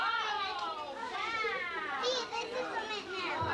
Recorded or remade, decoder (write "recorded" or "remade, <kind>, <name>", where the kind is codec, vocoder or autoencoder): recorded